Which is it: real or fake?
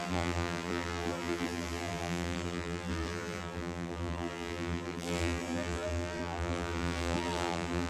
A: fake